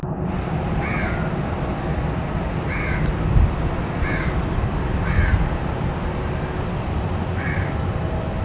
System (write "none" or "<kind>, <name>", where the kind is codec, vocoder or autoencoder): none